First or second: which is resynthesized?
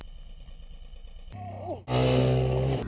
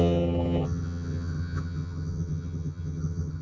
second